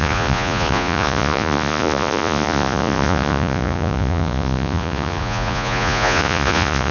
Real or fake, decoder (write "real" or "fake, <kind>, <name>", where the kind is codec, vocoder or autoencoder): fake, vocoder, Vocos